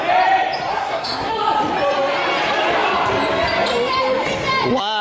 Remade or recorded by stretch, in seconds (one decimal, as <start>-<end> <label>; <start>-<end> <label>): 0.0-0.7 recorded; 0.7-1.3 remade; 1.3-5.0 recorded